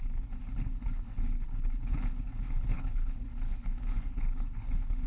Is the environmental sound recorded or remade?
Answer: remade